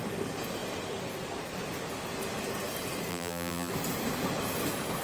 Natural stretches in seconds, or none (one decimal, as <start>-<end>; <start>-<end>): 0.0-3.1; 3.7-5.0